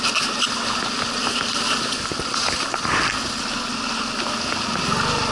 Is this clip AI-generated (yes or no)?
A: no